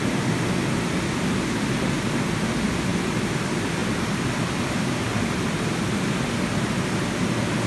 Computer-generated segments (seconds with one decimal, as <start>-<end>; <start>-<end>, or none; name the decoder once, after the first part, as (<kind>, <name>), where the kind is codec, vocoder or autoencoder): 3.8-6.3 (vocoder, BigVGAN v2)